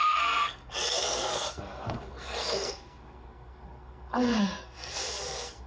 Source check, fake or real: fake